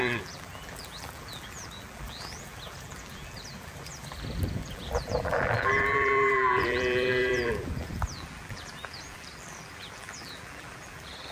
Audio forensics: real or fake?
fake